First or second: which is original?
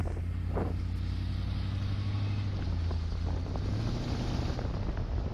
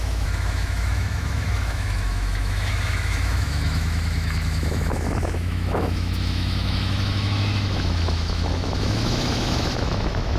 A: first